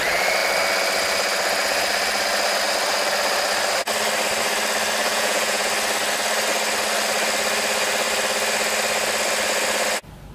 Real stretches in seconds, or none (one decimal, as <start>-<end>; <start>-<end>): 0.0-5.0; 5.7-10.3

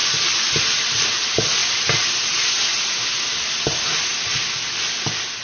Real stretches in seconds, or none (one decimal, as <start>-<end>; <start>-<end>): 0.0-5.4

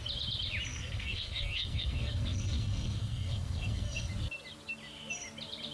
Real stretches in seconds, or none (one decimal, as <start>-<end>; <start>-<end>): 0.0-0.7; 4.1-5.7

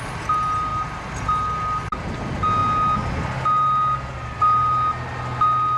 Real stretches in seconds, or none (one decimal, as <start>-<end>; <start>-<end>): 0.0-5.8

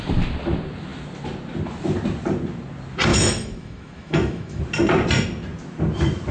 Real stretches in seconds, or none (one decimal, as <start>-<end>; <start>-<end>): 0.0-3.1; 4.6-6.3